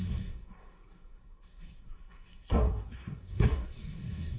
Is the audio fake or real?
fake